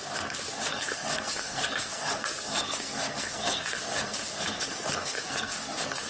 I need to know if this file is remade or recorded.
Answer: remade